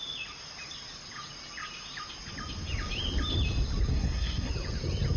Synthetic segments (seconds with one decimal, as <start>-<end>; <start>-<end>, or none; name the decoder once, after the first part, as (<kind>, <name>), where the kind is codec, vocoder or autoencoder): 3.9-4.5 (codec, SNAC)